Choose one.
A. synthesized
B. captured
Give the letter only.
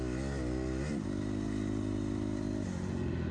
B